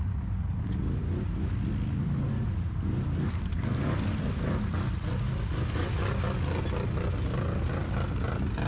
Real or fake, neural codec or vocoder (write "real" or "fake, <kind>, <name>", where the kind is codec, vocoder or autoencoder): real